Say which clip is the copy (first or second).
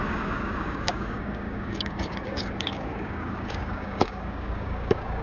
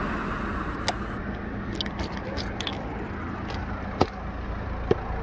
first